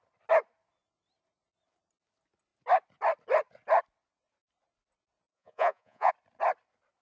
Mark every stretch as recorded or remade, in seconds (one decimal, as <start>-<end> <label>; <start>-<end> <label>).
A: 0.0-5.3 recorded; 5.3-6.1 remade; 6.1-7.0 recorded